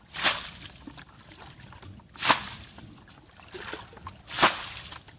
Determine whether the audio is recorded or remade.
recorded